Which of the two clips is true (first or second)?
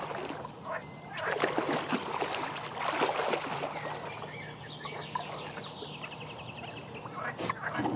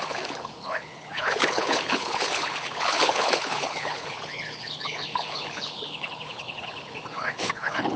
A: first